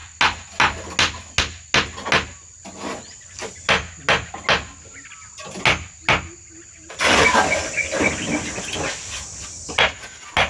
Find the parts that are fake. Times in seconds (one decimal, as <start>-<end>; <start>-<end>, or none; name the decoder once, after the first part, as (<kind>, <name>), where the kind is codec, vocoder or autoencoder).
none